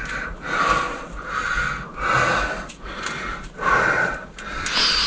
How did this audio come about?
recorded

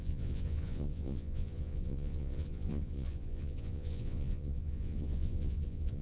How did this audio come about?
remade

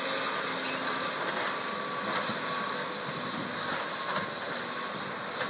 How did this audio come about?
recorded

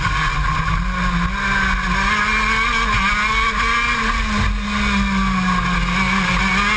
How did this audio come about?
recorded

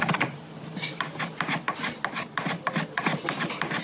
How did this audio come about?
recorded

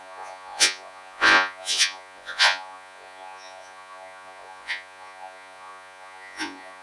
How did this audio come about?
remade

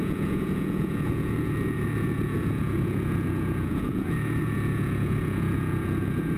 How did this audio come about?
remade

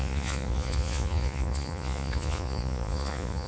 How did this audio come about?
remade